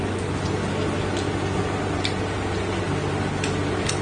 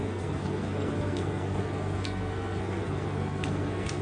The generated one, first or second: second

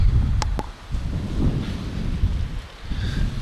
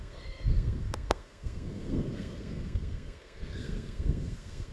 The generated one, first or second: second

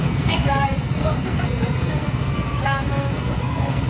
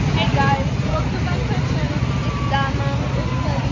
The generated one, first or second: first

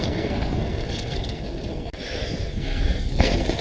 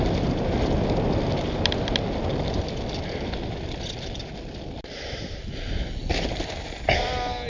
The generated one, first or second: first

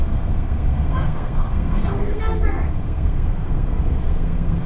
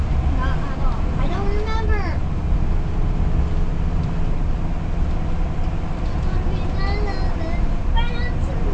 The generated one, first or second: first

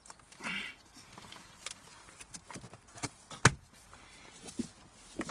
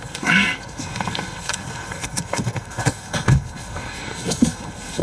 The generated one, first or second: second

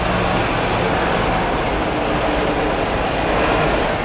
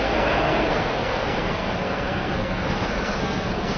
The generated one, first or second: second